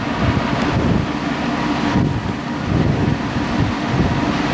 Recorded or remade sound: recorded